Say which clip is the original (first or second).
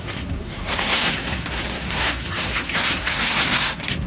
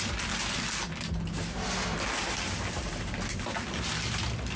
second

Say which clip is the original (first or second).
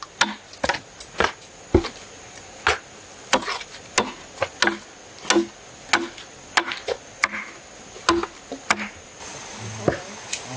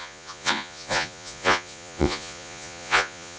first